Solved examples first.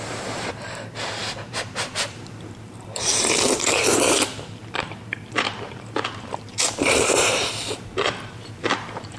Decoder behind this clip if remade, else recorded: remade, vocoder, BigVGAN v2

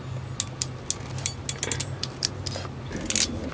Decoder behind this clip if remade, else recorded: recorded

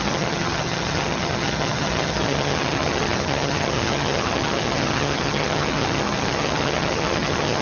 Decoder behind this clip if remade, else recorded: remade, vocoder, HiFi-GAN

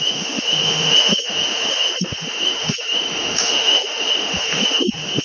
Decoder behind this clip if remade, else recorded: remade, autoencoder, DAC-VAE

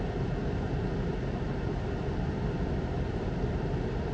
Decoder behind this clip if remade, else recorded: recorded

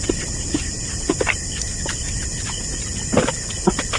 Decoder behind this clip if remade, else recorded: recorded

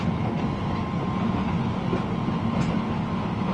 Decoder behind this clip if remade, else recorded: recorded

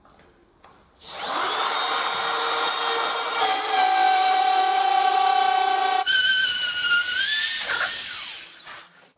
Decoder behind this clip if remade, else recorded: recorded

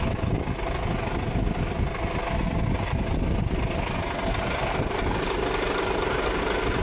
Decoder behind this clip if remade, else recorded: recorded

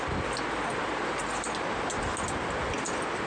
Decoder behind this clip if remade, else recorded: recorded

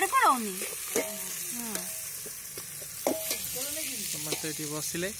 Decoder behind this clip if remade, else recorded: recorded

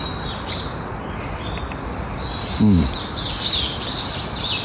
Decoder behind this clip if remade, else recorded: recorded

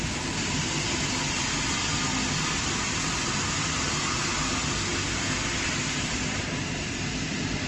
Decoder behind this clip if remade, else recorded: recorded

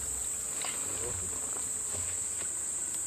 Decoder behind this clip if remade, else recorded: recorded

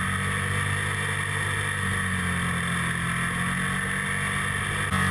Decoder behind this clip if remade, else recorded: recorded